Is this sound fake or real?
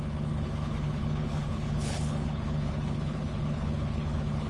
fake